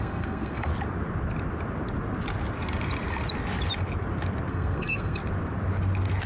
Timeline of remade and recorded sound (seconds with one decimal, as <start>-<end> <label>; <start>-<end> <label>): 0.0-0.7 remade; 0.7-4.5 recorded; 4.5-5.2 remade; 5.2-6.3 recorded